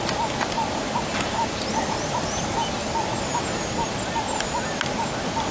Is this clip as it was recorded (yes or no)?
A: yes